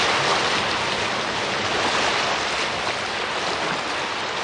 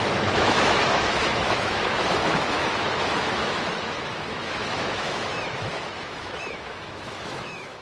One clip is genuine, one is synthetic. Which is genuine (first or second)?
first